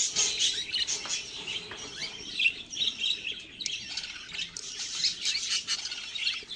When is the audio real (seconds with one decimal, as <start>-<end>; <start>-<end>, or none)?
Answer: 0.0-2.0; 2.6-6.6